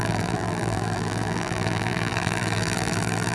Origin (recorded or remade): remade